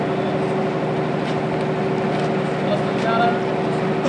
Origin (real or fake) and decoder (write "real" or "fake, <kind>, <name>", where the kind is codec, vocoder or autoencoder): real